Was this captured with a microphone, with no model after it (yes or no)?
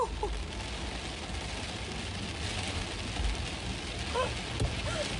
yes